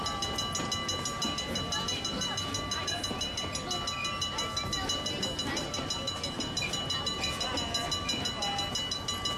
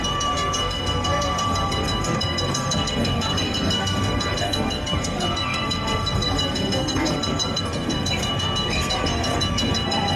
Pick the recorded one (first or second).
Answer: first